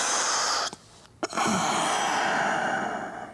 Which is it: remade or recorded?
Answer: recorded